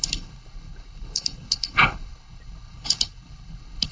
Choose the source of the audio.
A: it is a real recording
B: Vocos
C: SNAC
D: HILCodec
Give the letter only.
D